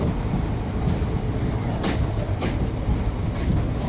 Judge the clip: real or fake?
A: real